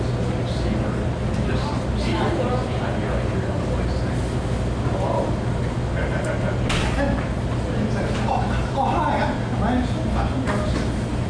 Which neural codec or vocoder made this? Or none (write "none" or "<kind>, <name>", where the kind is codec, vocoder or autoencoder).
none